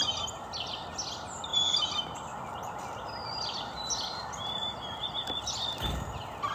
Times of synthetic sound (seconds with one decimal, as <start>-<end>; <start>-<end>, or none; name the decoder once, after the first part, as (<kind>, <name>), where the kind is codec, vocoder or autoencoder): none